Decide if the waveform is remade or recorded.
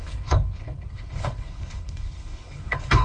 remade